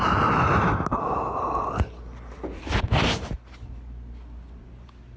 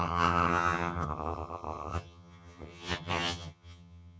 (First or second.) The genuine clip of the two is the first